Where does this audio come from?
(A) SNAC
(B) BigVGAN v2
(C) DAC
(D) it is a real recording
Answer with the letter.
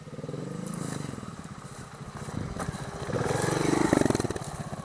D